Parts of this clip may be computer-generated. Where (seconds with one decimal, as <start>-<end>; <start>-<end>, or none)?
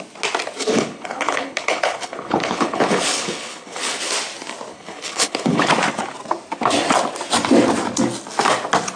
0.6-4.1; 4.7-5.7